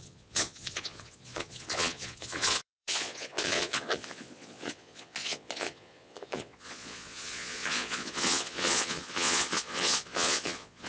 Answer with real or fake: fake